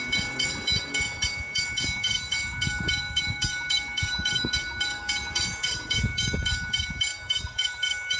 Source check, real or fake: fake